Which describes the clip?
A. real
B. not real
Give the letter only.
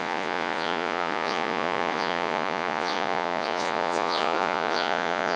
B